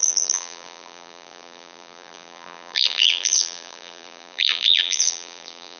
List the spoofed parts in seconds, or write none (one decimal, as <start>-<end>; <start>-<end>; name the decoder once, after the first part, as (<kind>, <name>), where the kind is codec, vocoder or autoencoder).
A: 0.0-5.8 (vocoder, BigVGAN v2)